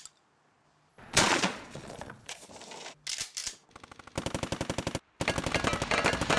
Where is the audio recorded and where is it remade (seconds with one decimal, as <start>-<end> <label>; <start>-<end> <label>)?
0.0-0.9 recorded; 0.9-2.5 remade; 2.5-6.4 recorded